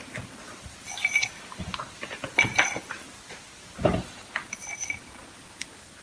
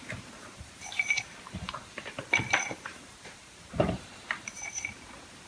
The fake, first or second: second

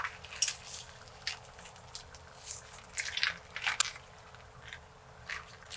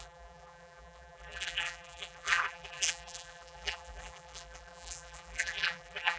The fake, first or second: second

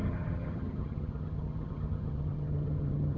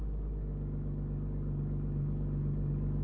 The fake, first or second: first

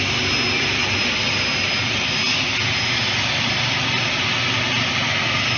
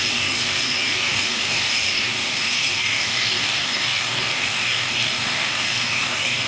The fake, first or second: second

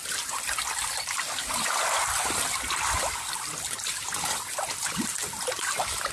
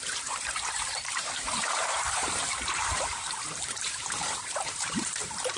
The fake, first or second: second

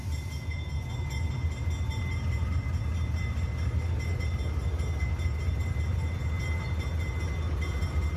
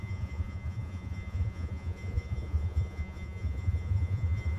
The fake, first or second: second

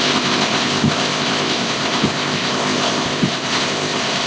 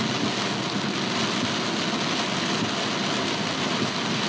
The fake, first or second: first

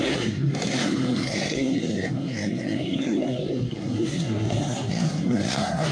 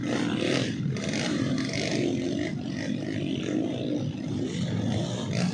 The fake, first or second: first